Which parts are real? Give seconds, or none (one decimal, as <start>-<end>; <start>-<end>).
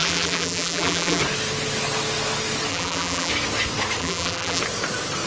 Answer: 1.2-2.7; 3.3-4.0; 4.6-5.3